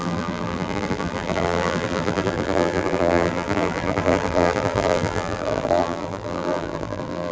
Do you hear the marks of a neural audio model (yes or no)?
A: yes